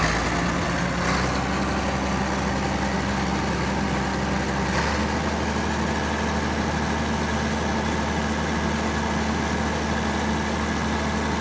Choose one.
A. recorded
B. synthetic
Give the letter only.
A